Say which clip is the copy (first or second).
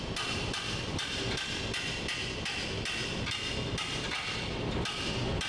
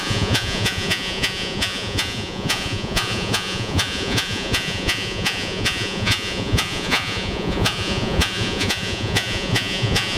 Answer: second